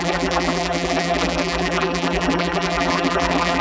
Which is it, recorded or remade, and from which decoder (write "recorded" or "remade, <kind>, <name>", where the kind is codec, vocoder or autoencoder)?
remade, vocoder, BigVGAN v2